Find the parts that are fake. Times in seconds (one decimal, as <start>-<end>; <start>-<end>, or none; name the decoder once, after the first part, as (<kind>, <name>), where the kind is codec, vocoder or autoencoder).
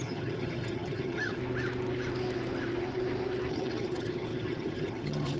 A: 0.0-1.4 (vocoder, HiFi-GAN); 3.5-5.4